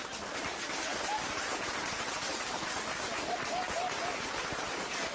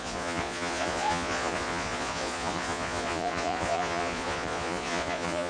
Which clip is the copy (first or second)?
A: second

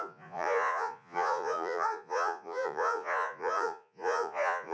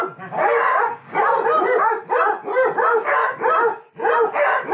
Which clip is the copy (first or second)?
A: first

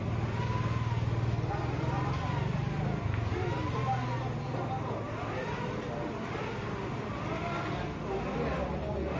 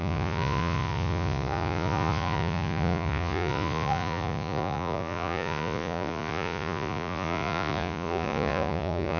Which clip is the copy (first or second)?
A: second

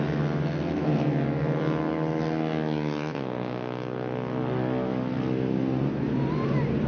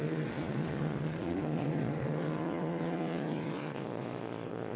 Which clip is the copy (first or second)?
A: second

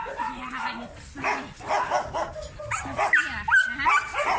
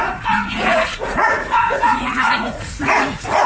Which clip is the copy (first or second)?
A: second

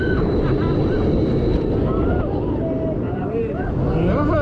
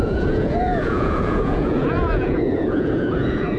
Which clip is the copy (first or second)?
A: second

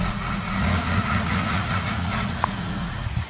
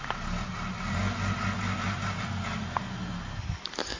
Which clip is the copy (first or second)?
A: first